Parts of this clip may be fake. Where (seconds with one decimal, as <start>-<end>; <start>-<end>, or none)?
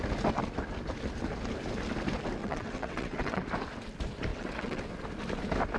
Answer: 2.4-3.4; 4.3-4.8